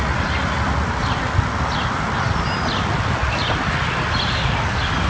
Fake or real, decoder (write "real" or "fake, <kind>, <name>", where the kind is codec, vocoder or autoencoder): real